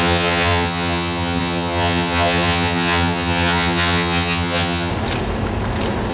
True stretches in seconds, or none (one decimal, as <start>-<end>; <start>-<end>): 4.9-6.1